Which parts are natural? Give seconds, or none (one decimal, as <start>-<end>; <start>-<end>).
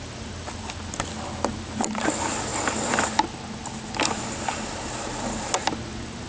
0.0-6.3